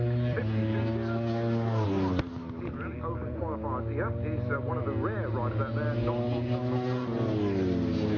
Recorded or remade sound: recorded